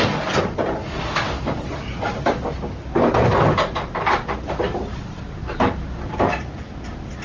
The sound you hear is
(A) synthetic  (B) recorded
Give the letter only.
B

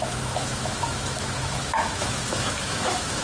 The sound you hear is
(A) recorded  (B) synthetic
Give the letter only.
B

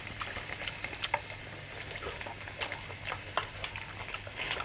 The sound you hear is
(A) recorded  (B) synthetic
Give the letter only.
A